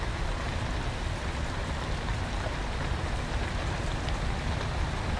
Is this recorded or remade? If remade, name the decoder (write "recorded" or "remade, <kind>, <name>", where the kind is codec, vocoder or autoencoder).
recorded